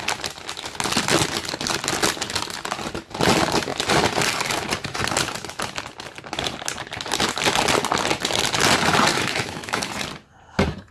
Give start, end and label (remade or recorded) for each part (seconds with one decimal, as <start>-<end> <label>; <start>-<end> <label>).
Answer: 0.0-9.1 recorded; 9.1-9.9 remade; 9.9-10.9 recorded